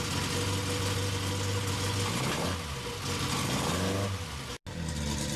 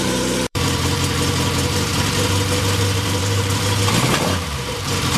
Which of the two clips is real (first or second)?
first